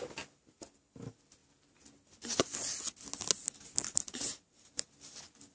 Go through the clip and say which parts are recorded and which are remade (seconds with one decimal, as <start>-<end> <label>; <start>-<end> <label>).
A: 0.0-5.5 recorded